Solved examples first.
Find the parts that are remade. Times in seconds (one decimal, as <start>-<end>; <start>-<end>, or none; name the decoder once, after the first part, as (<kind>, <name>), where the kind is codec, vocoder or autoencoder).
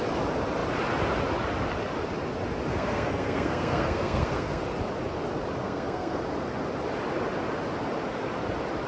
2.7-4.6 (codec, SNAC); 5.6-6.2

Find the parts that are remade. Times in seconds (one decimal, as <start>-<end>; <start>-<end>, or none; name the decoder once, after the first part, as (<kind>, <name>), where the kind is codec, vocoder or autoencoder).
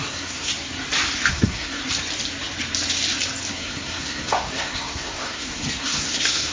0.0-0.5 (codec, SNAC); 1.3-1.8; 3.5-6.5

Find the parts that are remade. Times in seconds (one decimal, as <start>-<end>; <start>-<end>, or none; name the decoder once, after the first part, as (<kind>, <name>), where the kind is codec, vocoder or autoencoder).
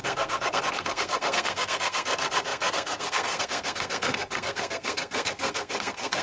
0.0-6.2 (codec, SNAC)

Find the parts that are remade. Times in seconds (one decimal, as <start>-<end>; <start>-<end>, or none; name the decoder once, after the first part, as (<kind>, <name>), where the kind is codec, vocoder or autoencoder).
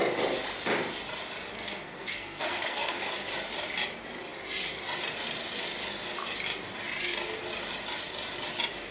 1.5-3.0 (codec, SNAC)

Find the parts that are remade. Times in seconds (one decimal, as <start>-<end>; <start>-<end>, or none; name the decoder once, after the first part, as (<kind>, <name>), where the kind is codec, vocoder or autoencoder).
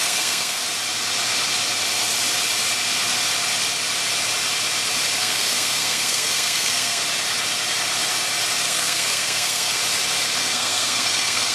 0.0-0.6 (codec, SNAC); 5.2-7.0; 8.6-9.8; 10.4-11.5